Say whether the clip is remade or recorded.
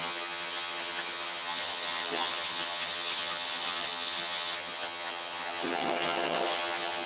remade